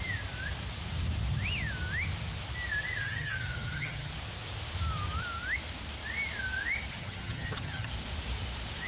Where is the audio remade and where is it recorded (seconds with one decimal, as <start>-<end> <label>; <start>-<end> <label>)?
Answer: 0.0-3.0 recorded; 3.0-4.1 remade; 4.1-6.9 recorded; 6.9-7.9 remade; 7.9-8.9 recorded

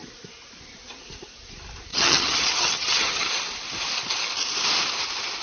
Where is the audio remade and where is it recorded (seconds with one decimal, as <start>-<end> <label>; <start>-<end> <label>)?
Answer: 0.0-1.9 recorded; 1.9-3.3 remade; 3.3-5.4 recorded

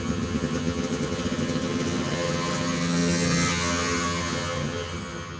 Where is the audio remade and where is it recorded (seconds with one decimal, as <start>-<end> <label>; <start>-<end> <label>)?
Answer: 0.0-5.4 remade

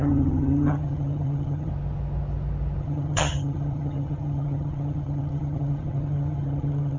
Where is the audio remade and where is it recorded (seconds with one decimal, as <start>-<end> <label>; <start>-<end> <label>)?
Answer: 0.0-1.7 remade; 1.7-2.8 recorded; 2.8-7.0 remade

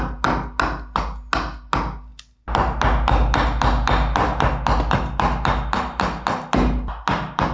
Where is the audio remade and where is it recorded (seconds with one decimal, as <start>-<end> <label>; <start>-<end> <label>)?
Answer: 0.0-7.5 recorded